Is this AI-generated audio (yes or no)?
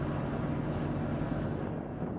no